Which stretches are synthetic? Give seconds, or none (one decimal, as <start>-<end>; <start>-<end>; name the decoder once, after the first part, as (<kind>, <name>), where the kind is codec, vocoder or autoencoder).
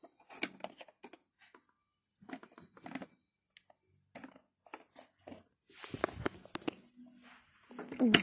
none